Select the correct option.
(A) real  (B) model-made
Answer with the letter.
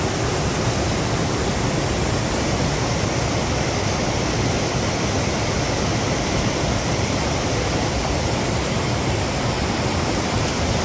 A